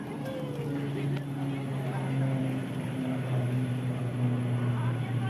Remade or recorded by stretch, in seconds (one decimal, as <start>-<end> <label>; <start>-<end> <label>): 0.0-2.4 recorded; 2.4-4.0 remade; 4.0-5.3 recorded